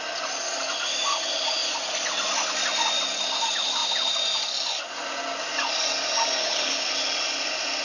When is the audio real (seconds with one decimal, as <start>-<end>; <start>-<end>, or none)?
0.0-6.4; 6.9-7.8